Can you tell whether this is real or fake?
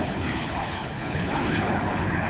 fake